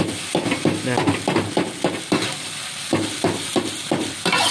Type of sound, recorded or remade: recorded